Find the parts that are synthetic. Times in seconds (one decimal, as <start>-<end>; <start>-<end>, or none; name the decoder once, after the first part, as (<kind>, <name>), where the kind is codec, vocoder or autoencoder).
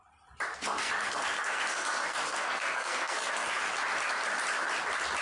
0.5-3.6 (codec, SNAC)